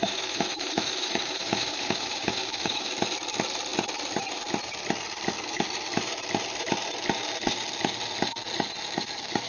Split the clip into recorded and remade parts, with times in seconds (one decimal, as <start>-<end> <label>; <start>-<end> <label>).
0.0-2.9 remade; 2.9-9.5 recorded